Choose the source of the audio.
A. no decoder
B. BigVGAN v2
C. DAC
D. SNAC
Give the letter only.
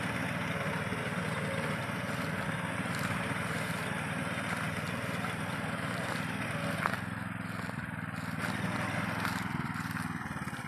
A